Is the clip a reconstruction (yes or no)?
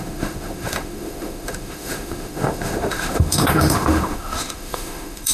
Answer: yes